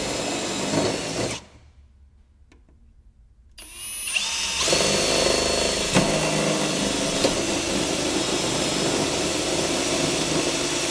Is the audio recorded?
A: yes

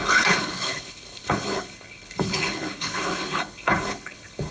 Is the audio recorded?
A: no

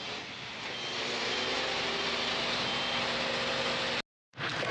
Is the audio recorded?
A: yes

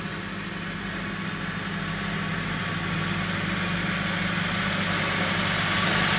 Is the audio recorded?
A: yes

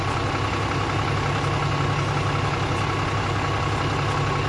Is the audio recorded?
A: yes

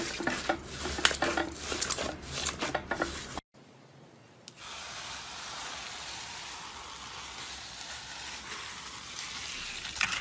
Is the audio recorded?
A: yes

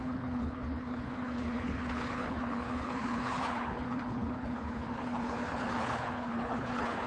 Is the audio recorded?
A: no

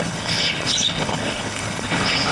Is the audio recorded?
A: no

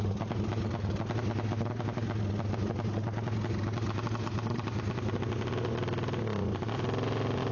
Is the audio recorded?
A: yes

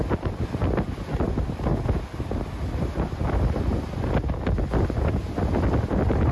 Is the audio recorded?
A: yes